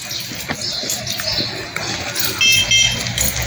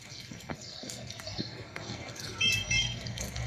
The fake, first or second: second